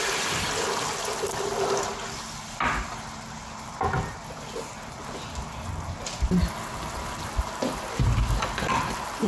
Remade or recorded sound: recorded